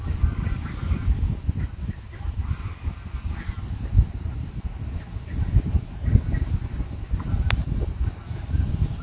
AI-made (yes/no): no